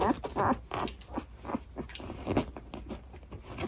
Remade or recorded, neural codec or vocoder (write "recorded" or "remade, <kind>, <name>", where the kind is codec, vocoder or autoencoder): recorded